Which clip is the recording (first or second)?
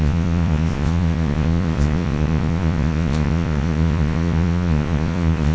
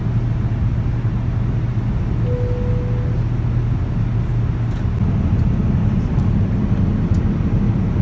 second